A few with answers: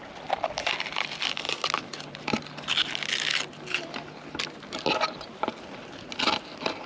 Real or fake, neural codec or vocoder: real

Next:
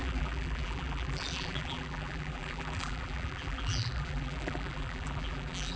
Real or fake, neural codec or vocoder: fake, vocoder, BigVGAN v2